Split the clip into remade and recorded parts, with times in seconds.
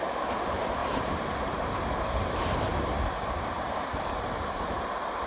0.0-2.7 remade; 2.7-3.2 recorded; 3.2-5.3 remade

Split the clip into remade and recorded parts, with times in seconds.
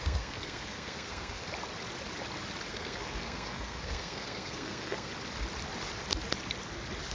0.0-1.4 remade; 1.4-2.7 recorded; 2.7-5.1 remade; 5.1-7.1 recorded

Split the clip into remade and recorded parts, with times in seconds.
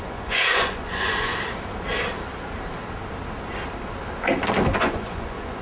0.0-1.3 remade; 1.3-4.7 recorded; 4.7-5.6 remade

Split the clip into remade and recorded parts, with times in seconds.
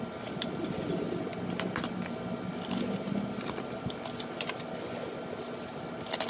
0.0-6.3 recorded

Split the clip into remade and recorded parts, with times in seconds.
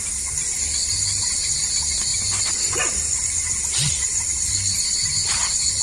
0.0-0.8 recorded; 0.8-1.4 remade; 1.4-2.1 recorded; 2.1-2.8 remade; 2.8-3.8 recorded; 3.8-4.4 remade; 4.4-5.8 recorded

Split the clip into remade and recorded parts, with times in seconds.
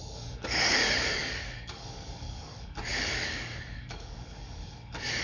0.0-5.2 remade